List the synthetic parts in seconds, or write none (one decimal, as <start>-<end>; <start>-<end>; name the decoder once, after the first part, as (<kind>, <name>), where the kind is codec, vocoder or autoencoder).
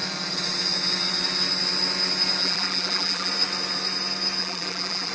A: 2.4-3.3 (vocoder, BigVGAN v2); 4.4-5.1